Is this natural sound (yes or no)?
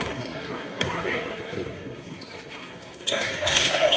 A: no